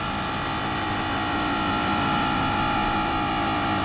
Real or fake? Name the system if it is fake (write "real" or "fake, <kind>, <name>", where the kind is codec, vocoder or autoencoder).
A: real